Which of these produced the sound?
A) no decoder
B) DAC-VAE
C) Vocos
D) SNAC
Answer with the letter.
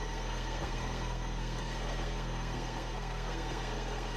D